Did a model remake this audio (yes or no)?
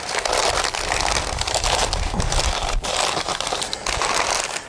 no